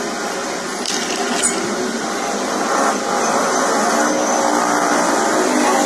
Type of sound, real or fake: real